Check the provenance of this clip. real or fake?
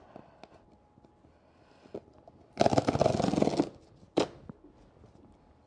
real